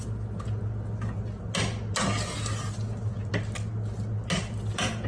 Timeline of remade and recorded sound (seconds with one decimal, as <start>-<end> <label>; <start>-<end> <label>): 0.0-5.1 recorded